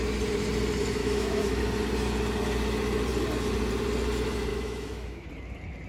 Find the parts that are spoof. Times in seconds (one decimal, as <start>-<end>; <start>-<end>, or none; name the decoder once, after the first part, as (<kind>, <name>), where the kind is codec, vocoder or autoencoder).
1.0-1.6 (autoencoder, DAC-VAE); 4.5-5.3